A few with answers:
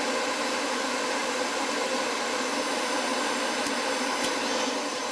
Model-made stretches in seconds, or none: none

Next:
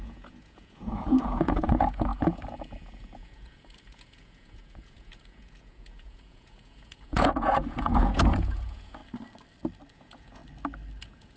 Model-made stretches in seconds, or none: 0.0-9.0 (vocoder, Vocos); 9.9-10.4; 11.0-11.4

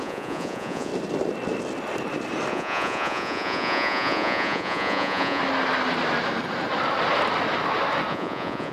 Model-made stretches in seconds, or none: 0.0-0.9 (vocoder, Vocos); 2.5-5.4; 8.1-8.7

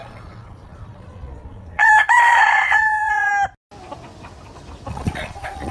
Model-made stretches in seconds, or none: 0.0-3.3 (vocoder, Vocos); 4.9-5.7

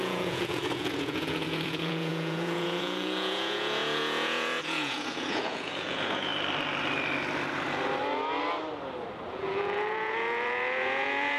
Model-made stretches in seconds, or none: 0.0-6.3 (vocoder, Vocos); 9.3-11.4

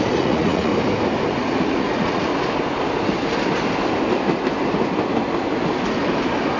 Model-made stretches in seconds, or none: 0.0-0.7 (vocoder, Vocos); 1.4-2.3

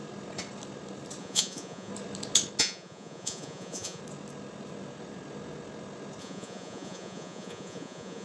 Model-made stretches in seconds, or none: 1.2-1.9 (vocoder, Vocos); 2.6-4.0; 6.2-8.2